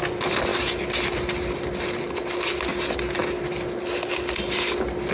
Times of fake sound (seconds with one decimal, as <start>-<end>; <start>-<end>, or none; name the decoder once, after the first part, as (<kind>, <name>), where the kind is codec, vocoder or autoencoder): none

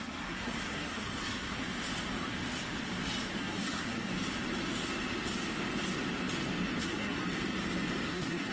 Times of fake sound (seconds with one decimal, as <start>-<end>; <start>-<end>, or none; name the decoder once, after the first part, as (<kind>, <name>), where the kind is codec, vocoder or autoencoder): 0.0-1.6 (codec, SNAC); 3.4-4.1; 6.8-7.2; 8.1-8.5

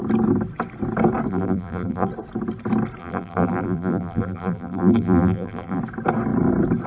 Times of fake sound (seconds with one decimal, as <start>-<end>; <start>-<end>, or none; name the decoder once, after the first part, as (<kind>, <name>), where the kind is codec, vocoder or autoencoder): 1.3-2.1 (vocoder, BigVGAN v2); 3.0-5.8

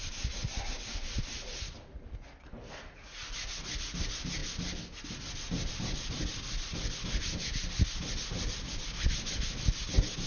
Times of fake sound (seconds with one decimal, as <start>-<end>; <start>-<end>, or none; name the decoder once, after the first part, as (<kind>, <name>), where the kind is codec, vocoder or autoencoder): none